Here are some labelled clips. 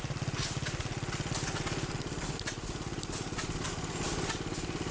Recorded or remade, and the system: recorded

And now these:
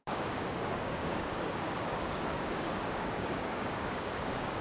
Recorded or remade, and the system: remade, codec, DAC